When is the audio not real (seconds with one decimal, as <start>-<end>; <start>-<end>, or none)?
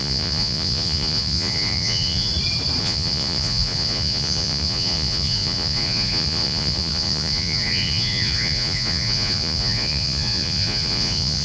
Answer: 0.0-2.3; 2.8-11.4